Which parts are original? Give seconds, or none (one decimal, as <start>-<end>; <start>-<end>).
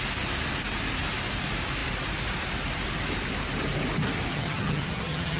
0.0-4.3